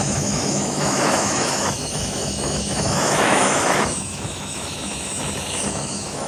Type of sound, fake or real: fake